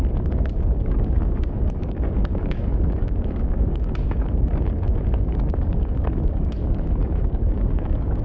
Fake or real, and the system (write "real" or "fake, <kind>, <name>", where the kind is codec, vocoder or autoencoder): fake, codec, DAC